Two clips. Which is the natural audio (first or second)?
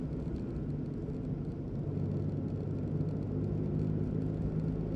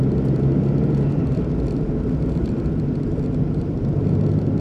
first